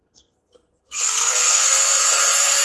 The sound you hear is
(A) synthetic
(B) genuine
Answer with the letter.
A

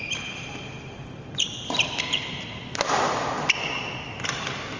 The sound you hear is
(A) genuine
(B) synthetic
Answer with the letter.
A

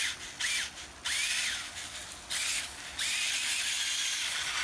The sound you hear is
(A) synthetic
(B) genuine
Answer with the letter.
B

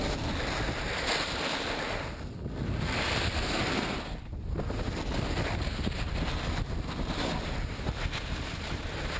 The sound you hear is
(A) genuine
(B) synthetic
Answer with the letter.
A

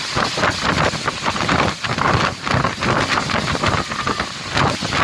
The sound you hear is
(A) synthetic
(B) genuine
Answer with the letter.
B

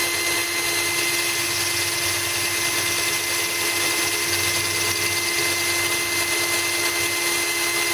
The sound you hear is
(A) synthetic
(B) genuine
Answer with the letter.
B